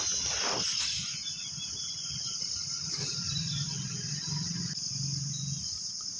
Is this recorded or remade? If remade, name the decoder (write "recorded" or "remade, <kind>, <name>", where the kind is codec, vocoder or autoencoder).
recorded